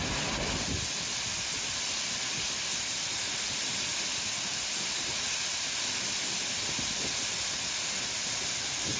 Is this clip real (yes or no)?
yes